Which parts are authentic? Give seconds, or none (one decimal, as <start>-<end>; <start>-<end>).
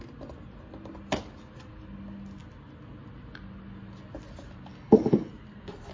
0.0-4.7; 5.3-5.9